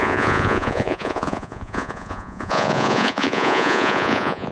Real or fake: fake